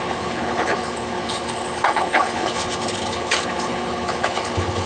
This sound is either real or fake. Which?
fake